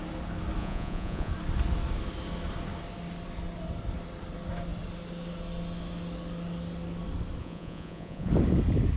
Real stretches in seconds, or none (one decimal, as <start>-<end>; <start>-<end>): 0.0-0.6; 1.3-7.4; 8.3-9.0